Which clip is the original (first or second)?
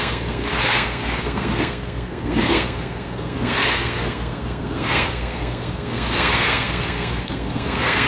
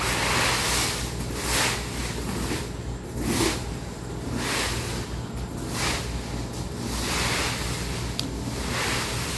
second